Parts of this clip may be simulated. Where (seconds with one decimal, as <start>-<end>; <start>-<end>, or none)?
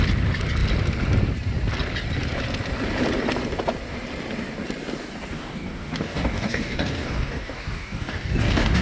5.3-8.8